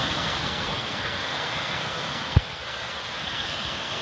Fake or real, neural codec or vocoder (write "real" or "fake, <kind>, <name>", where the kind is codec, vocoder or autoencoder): fake, codec, SNAC